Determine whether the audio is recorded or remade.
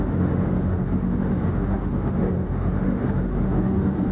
remade